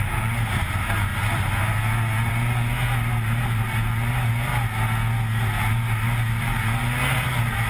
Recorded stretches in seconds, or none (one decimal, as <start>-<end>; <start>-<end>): 1.1-2.3; 4.5-5.7